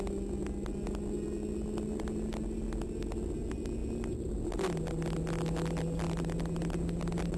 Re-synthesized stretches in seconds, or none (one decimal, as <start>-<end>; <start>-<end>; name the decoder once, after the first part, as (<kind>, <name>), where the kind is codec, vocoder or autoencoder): none